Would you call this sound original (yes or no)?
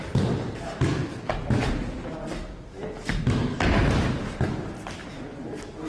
yes